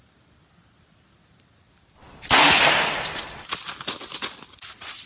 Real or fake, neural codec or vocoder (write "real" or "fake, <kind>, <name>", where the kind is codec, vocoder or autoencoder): real